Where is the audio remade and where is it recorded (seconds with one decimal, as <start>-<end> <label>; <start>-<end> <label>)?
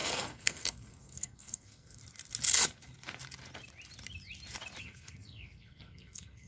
0.0-2.0 remade; 2.0-4.8 recorded; 4.8-6.5 remade